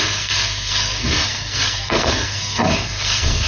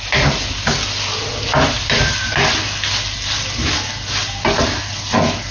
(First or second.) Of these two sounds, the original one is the second